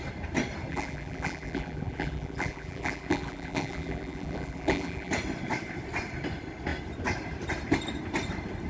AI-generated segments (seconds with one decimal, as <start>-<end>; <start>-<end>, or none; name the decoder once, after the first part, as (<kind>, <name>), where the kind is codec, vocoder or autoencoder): 0.7-5.1 (vocoder, BigVGAN v2)